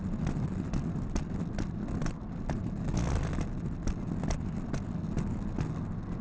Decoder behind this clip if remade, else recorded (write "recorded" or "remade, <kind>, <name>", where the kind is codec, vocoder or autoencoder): recorded